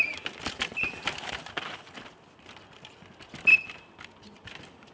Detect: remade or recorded recorded